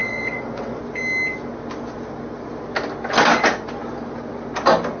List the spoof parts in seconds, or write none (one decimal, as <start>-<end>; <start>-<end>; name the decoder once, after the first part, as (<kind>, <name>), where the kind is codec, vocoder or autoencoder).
0.0-0.8 (vocoder, WaveNeXt)